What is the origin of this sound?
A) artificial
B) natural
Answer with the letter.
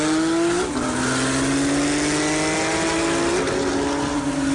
B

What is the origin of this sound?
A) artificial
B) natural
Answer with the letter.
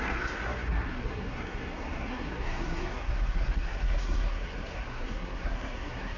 A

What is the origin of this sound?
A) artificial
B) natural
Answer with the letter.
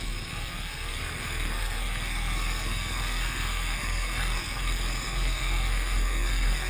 A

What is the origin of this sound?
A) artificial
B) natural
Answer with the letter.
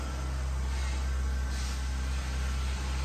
B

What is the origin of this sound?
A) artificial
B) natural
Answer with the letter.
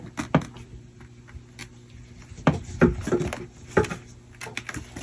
B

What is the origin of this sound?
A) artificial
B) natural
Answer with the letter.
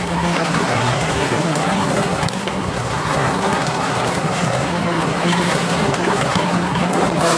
A